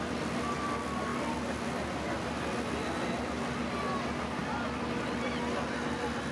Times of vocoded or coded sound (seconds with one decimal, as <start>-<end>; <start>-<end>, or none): none